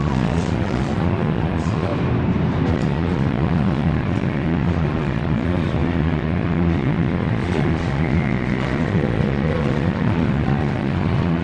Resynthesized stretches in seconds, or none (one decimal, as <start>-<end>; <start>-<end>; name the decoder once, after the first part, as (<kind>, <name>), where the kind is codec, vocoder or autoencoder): 0.0-1.9 (vocoder, Vocos); 2.7-11.4